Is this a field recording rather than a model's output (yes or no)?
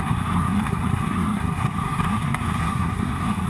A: no